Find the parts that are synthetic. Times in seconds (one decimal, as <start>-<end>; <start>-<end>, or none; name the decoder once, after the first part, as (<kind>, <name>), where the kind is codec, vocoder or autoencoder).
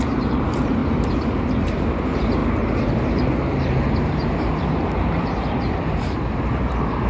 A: 0.0-0.8 (vocoder, BigVGAN v2); 1.6-2.4; 3.6-7.1